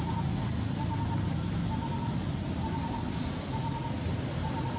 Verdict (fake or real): real